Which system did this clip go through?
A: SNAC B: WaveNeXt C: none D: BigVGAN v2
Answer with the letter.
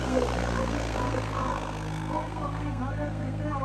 A